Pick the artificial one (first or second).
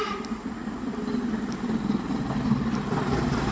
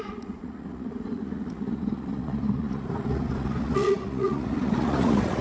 second